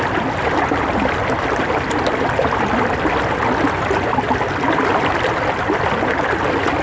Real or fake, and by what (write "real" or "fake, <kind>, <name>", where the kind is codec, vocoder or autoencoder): real